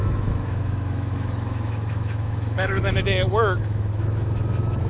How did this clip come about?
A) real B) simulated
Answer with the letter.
B